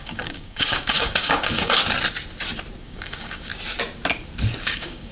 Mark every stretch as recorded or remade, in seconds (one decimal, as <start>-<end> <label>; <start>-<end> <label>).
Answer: 0.0-1.8 remade; 1.8-2.8 recorded; 2.8-3.5 remade; 3.5-4.6 recorded; 4.6-5.1 remade